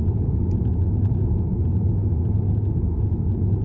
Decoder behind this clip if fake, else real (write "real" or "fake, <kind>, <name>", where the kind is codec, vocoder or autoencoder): real